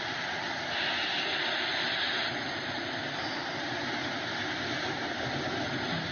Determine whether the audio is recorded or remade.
recorded